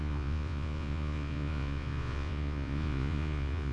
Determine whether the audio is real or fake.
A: fake